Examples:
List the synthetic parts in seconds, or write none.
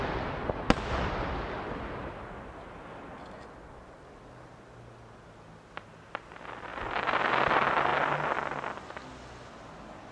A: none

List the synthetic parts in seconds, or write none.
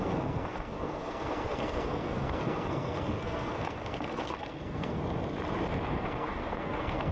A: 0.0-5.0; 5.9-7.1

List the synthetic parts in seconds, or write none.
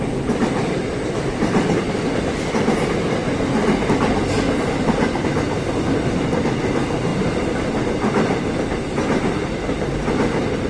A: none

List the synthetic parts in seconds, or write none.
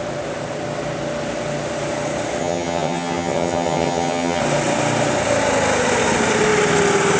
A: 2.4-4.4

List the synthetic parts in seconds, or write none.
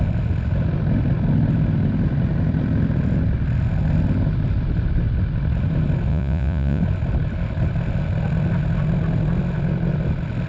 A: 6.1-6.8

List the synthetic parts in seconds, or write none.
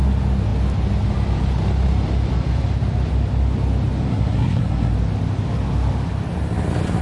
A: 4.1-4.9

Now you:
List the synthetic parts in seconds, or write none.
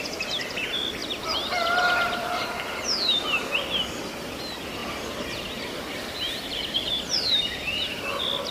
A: 1.0-2.4; 4.8-8.0